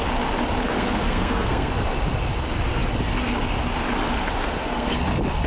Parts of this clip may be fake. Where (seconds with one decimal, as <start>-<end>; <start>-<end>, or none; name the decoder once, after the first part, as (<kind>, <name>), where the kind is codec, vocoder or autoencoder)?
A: 0.7-1.7 (codec, SNAC); 4.4-4.9